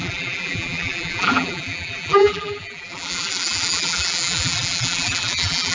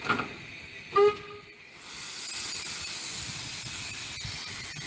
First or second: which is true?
second